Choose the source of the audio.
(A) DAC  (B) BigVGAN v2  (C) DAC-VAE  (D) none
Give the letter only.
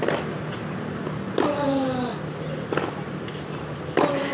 D